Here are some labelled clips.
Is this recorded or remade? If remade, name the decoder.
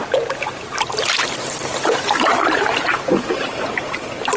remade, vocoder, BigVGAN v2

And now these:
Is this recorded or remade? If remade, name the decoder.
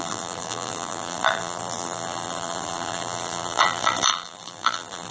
remade, vocoder, BigVGAN v2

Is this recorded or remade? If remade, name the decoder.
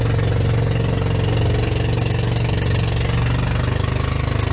recorded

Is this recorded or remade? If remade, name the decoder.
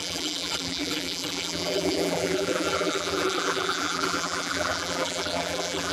remade, vocoder, BigVGAN v2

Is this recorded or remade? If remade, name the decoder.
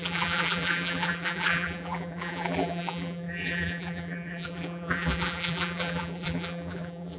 remade, vocoder, BigVGAN v2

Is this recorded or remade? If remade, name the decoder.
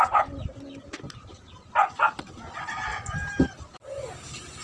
recorded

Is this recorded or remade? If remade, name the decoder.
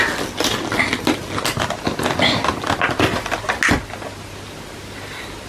recorded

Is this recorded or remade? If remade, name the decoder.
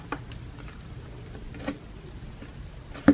recorded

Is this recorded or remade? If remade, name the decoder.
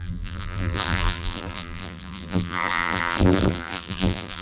remade, vocoder, BigVGAN v2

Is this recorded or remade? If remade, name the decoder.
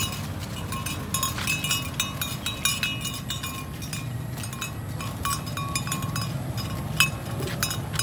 recorded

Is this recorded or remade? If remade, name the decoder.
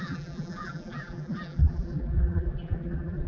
remade, vocoder, BigVGAN v2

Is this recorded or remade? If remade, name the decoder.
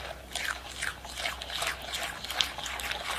recorded